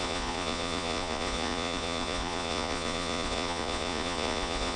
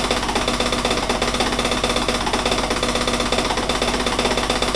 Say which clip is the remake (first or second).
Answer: first